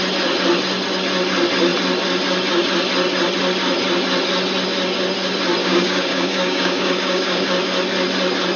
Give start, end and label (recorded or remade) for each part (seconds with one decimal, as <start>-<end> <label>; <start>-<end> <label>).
0.0-5.6 recorded; 5.6-7.5 remade; 7.5-8.6 recorded